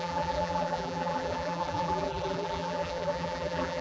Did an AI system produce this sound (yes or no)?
yes